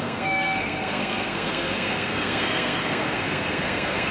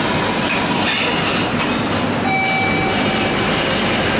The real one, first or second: second